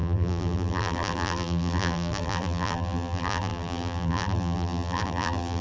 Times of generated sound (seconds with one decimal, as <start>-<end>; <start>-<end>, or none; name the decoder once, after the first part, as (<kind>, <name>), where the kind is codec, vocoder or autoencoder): 0.0-5.6 (vocoder, BigVGAN v2)